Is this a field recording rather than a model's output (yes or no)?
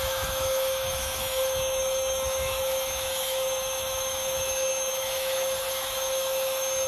no